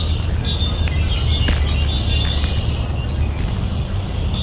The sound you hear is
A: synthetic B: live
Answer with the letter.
B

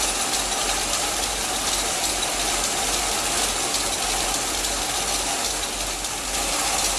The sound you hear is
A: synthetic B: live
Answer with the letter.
B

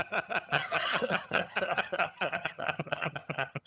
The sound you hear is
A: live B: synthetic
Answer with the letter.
B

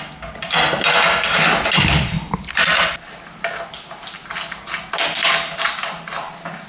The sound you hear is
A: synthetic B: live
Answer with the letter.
B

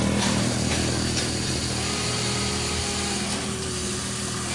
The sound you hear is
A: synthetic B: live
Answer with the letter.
B